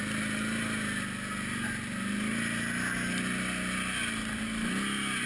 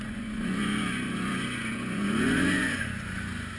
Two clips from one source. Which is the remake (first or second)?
second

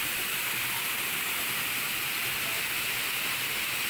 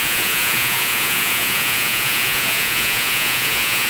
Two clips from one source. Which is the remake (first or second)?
second